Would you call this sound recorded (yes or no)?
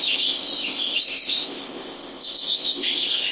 no